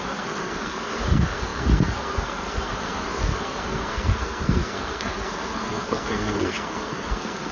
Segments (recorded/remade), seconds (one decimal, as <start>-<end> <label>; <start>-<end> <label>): 0.0-7.5 remade